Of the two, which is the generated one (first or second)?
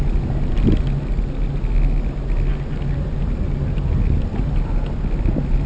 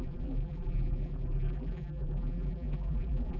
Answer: second